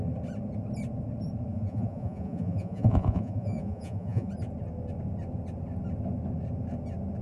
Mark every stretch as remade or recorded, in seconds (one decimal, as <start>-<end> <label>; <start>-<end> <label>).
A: 0.0-1.5 recorded; 1.5-4.3 remade; 4.3-7.2 recorded